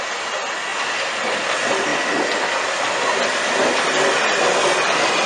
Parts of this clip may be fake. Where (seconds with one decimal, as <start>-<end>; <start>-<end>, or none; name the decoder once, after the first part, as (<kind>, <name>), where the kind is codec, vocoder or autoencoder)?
none